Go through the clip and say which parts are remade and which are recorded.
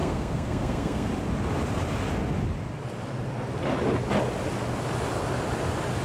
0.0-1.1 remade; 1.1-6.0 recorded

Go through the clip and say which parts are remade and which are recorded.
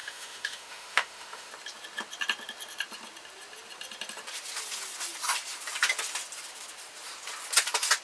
0.0-1.5 remade; 1.5-8.0 recorded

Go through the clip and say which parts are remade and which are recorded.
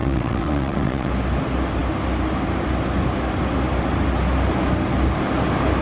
0.0-1.1 remade; 1.1-5.8 recorded